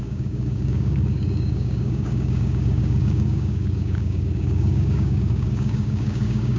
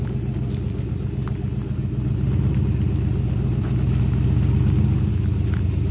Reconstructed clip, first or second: first